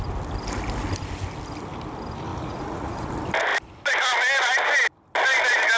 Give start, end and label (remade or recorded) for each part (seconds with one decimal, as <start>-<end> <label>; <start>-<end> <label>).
0.0-2.3 recorded; 2.3-3.1 remade; 3.1-5.8 recorded